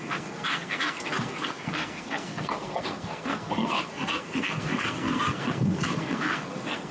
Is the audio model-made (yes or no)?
yes